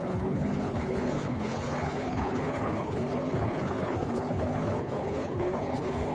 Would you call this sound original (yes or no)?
no